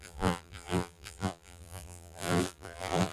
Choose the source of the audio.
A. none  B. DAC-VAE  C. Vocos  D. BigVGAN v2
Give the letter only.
D